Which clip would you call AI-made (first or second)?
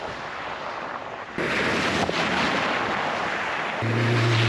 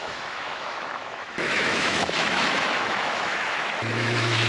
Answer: second